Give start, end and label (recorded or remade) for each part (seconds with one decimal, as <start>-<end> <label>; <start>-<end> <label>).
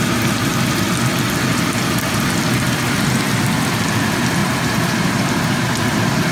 0.0-4.4 recorded; 4.4-5.3 remade; 5.3-6.3 recorded